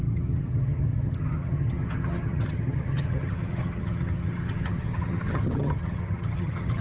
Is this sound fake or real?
fake